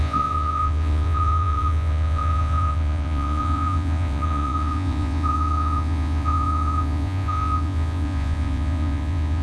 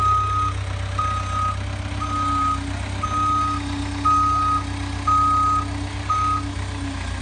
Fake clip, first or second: first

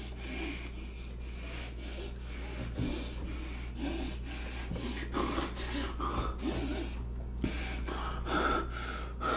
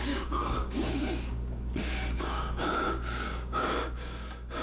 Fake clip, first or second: second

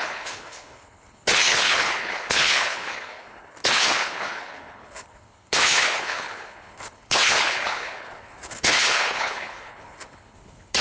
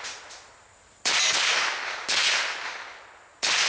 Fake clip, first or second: first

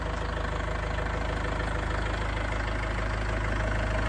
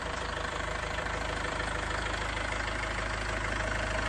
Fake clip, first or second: second